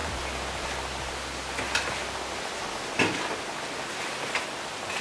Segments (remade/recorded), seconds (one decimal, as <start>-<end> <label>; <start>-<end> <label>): 0.0-5.0 recorded